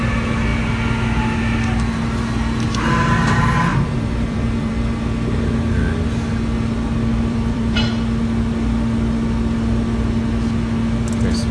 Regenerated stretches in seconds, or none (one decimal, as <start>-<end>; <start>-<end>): 3.7-4.7; 7.1-7.8